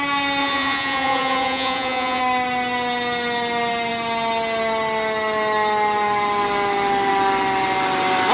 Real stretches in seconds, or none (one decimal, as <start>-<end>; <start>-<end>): 0.0-0.4; 2.2-8.3